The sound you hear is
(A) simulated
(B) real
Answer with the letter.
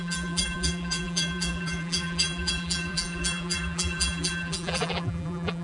A